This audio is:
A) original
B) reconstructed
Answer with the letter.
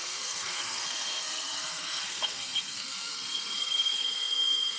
B